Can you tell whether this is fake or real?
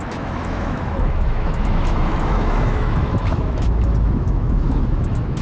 fake